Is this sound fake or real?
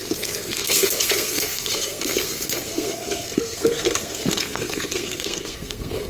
fake